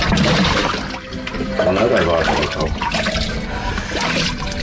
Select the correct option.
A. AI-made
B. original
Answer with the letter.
B